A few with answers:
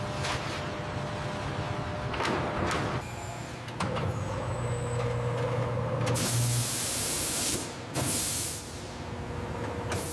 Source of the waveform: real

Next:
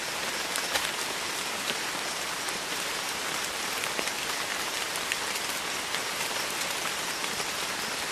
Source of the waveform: real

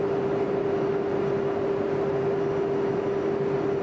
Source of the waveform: real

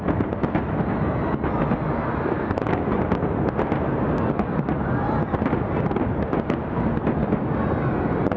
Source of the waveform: real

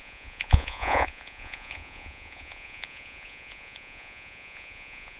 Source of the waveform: fake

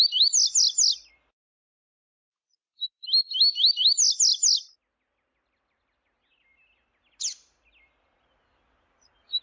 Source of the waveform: real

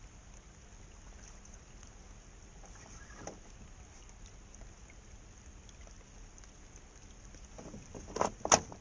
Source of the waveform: real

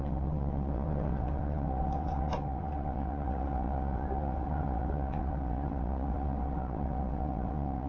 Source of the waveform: fake